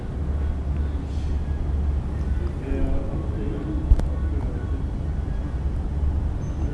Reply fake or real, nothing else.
real